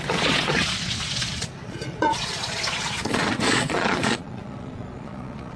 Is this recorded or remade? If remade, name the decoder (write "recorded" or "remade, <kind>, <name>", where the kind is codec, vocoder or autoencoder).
remade, vocoder, Vocos